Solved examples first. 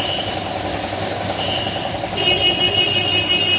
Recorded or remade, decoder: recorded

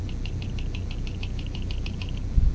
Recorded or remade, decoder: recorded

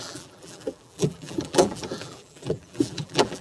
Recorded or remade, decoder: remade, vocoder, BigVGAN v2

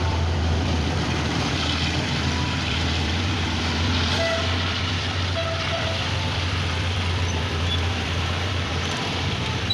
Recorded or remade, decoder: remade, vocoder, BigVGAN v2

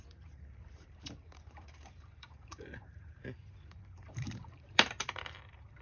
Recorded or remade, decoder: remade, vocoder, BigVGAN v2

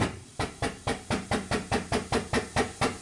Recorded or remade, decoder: remade, vocoder, BigVGAN v2